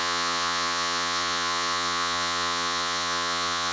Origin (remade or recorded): remade